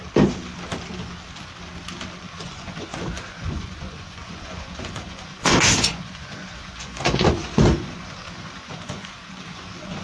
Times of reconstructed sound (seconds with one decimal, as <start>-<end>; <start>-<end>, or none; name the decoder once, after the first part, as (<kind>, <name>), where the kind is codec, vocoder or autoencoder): 2.2-10.0 (vocoder, Vocos)

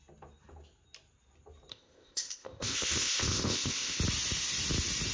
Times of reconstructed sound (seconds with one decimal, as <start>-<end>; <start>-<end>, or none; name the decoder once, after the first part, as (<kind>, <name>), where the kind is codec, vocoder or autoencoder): 1.7-4.0 (codec, ZipCodec)

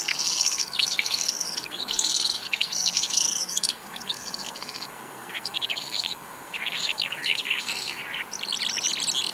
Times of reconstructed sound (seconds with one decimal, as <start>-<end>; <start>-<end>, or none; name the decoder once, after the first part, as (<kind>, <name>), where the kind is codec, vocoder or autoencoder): 0.0-8.0 (codec, SNAC)

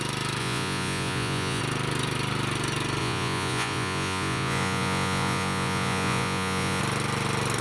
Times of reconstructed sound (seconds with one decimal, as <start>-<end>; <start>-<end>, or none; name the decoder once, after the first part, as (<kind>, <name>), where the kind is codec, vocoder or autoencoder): 0.4-1.6 (vocoder, Vocos); 3.0-6.8

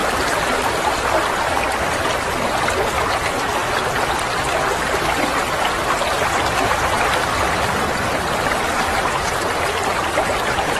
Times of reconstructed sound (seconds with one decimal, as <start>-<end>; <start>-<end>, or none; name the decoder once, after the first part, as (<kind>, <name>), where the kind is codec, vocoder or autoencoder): 0.0-10.8 (vocoder, BigVGAN v2)